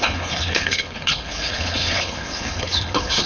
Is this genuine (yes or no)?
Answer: no